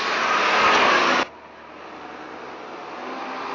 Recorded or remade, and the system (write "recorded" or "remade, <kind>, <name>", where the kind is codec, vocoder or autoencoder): recorded